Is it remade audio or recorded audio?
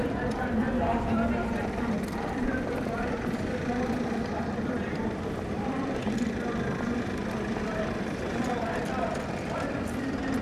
remade